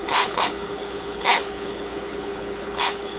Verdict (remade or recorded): remade